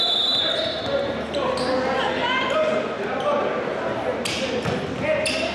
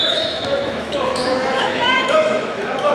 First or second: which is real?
first